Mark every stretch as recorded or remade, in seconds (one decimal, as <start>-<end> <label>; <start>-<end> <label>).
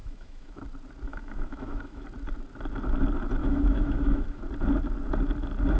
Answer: 0.0-0.6 remade; 0.6-1.1 recorded; 1.1-2.0 remade; 2.0-3.4 recorded; 3.4-4.4 remade; 4.4-5.8 recorded